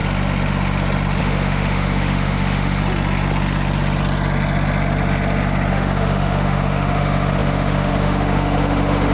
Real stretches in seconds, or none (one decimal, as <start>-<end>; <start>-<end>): 0.0-1.2; 2.8-5.7